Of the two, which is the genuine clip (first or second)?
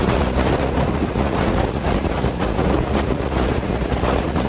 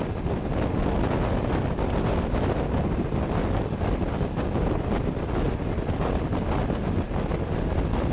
second